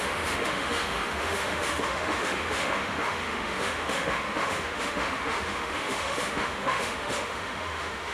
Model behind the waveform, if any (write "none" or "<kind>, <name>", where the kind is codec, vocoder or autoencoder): autoencoder, DAC-VAE